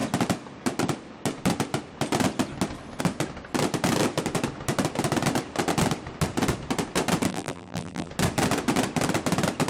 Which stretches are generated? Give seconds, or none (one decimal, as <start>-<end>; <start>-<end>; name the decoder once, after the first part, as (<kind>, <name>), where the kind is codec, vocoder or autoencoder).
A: 7.3-8.1 (vocoder, BigVGAN v2)